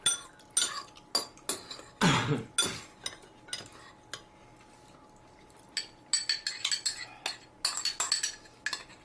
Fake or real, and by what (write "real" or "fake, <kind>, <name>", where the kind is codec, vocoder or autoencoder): real